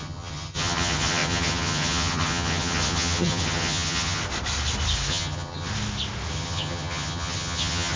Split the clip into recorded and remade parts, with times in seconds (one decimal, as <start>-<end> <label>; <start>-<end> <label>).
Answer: 0.0-4.2 remade; 4.2-5.1 recorded; 5.1-5.7 remade; 5.7-6.3 recorded; 6.3-8.0 remade